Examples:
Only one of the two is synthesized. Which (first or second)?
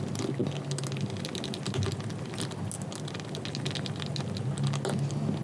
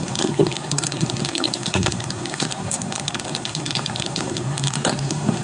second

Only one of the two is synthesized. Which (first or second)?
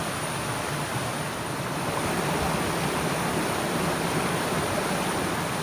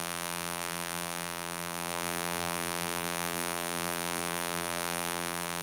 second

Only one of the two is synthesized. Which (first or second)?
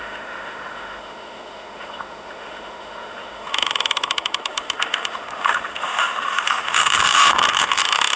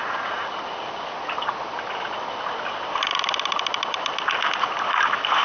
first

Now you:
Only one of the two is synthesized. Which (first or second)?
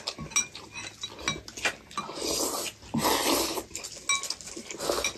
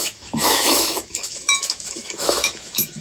second